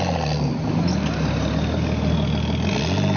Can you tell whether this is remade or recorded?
recorded